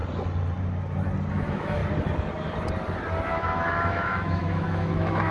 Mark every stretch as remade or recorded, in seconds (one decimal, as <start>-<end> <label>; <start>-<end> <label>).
0.0-1.3 recorded; 1.3-1.8 remade; 1.8-3.3 recorded; 3.3-5.3 remade